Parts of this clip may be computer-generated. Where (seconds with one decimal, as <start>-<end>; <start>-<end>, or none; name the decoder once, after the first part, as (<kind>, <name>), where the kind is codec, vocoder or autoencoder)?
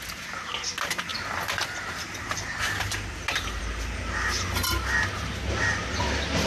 none